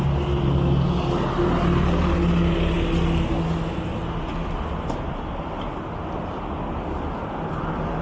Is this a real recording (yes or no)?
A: yes